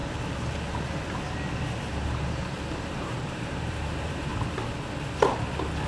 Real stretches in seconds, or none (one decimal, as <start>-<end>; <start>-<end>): 0.0-1.9; 4.3-5.9